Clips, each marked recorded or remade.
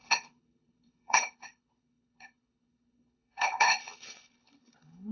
remade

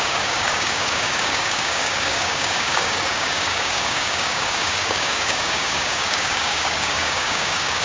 remade